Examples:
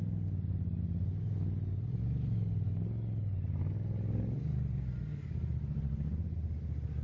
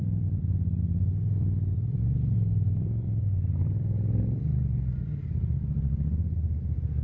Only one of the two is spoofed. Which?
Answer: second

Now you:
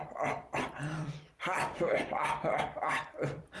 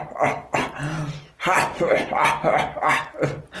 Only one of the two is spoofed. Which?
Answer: first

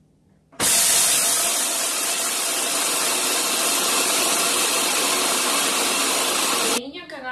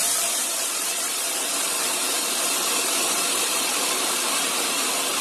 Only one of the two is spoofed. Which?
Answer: second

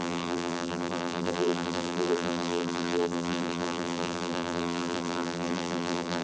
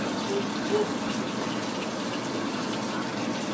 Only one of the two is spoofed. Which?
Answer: first